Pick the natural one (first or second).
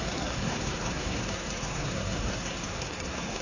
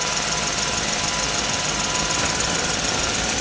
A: second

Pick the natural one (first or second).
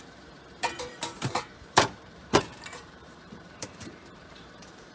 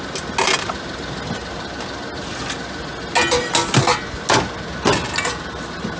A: second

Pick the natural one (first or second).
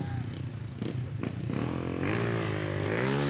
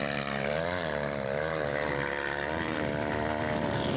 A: first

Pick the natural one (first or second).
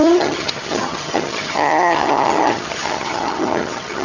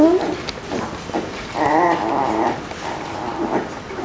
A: second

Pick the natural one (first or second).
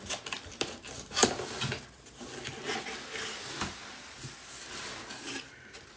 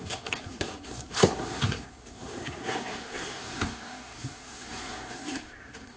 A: first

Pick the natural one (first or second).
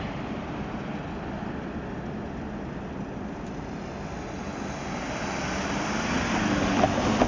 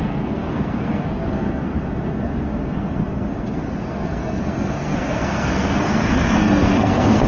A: first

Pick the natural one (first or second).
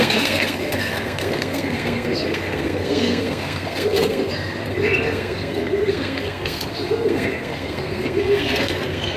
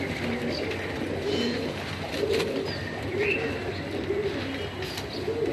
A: second